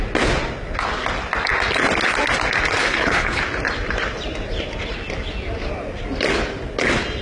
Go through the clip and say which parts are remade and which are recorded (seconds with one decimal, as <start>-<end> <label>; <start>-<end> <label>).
0.0-2.8 recorded; 2.8-3.4 remade; 3.4-7.2 recorded